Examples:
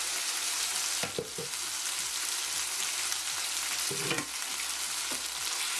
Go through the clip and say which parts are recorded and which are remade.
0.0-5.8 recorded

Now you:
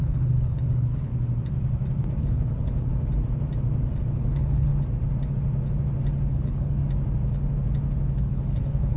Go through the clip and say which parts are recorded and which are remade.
0.0-1.1 remade; 1.1-2.2 recorded; 2.2-2.9 remade; 2.9-4.2 recorded; 4.2-4.7 remade; 4.7-6.3 recorded; 6.3-6.8 remade; 6.8-8.2 recorded; 8.2-9.0 remade